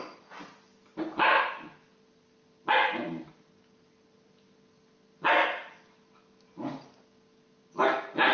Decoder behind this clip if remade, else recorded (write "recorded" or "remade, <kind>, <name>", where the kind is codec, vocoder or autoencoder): recorded